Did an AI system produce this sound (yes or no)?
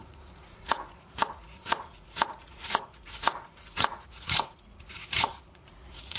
yes